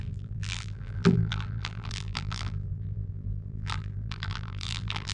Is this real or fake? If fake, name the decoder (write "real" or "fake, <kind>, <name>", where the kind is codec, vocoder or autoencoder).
fake, vocoder, BigVGAN v2